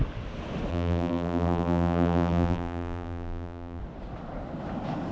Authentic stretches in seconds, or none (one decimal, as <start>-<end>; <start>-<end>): 0.0-0.7; 3.8-5.1